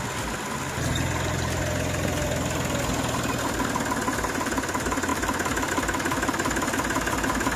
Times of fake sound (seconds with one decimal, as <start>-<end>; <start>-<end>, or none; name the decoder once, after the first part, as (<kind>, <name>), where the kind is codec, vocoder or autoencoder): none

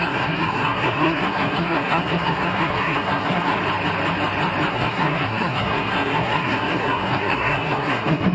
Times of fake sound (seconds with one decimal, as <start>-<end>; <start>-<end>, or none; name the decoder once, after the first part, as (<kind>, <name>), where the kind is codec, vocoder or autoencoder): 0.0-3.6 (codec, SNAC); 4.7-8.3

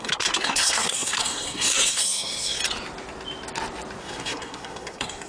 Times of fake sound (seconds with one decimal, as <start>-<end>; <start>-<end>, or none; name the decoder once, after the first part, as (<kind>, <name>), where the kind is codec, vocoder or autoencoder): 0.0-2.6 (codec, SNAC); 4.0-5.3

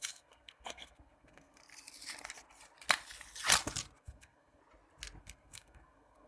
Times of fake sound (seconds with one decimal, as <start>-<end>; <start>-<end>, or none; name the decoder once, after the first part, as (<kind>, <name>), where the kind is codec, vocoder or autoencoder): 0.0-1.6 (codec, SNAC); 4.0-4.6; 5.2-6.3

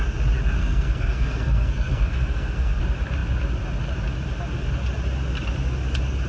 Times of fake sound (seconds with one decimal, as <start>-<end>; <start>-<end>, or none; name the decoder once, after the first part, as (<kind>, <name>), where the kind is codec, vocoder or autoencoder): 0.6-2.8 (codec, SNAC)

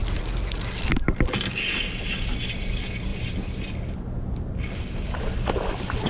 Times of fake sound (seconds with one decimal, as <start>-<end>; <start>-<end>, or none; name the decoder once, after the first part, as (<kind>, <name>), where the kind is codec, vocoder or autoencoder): none